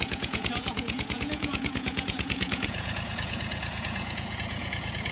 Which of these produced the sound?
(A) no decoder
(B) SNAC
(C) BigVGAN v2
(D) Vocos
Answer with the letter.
D